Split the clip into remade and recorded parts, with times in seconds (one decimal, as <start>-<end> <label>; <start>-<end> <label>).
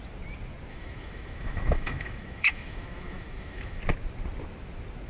0.0-0.7 recorded; 0.7-3.8 remade; 3.8-5.1 recorded